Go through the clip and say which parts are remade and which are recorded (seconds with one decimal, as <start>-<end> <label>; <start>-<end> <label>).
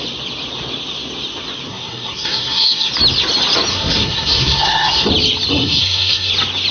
0.0-1.7 recorded; 1.7-2.9 remade; 2.9-3.7 recorded; 3.7-5.1 remade; 5.1-5.5 recorded; 5.5-6.3 remade; 6.3-6.7 recorded